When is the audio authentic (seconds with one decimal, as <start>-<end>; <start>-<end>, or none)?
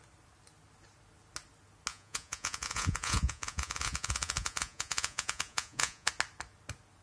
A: 0.0-1.9; 6.1-7.0